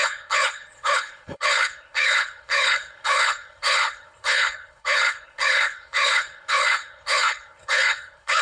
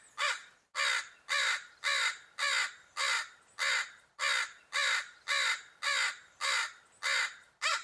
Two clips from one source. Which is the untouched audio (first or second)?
second